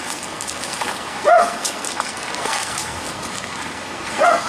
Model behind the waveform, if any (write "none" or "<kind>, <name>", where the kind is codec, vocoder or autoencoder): codec, SNAC